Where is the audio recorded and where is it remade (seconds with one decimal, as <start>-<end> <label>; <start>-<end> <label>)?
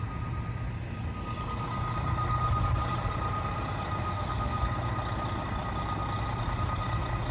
0.0-4.0 recorded; 4.0-4.6 remade; 4.6-7.3 recorded